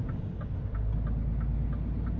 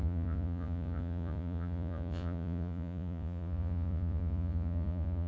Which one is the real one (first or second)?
first